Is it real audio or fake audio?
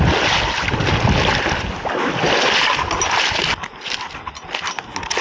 real